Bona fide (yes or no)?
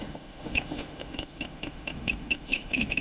no